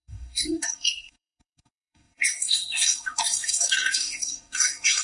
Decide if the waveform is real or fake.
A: fake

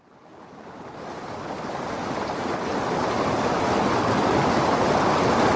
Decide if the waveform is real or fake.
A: real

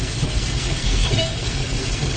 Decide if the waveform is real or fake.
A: fake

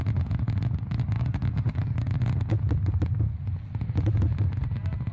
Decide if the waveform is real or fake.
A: real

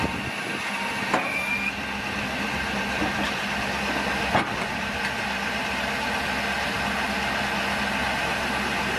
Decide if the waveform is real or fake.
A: real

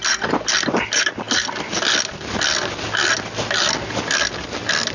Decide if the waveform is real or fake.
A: real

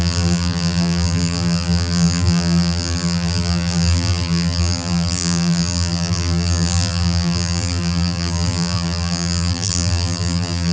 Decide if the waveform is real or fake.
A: fake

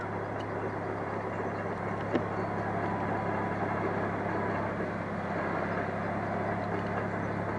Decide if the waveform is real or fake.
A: real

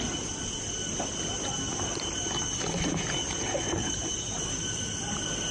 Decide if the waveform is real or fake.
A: real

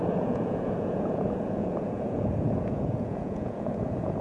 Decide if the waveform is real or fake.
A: fake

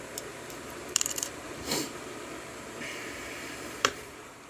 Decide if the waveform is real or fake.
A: fake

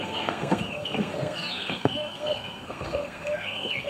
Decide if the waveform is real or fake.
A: fake